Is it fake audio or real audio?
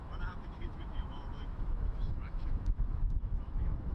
fake